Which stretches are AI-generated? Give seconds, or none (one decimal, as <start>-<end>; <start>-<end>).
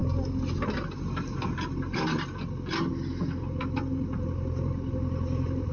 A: none